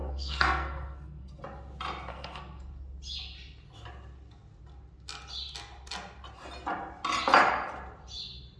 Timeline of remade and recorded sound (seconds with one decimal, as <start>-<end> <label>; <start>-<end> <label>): 0.0-1.4 remade; 1.4-2.1 recorded; 2.1-2.7 remade; 2.7-8.6 recorded